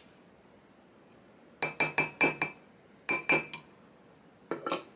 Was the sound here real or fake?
real